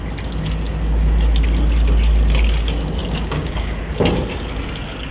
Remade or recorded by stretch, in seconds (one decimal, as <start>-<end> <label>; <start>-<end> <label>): 0.0-3.0 recorded; 3.0-3.8 remade; 3.8-5.1 recorded